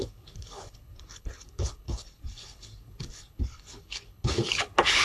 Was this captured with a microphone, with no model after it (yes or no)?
no